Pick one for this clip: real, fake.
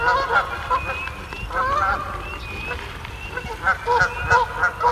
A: real